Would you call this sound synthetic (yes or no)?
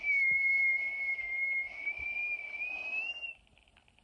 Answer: no